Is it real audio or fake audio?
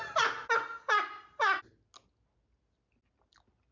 real